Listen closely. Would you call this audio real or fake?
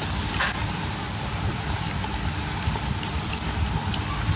real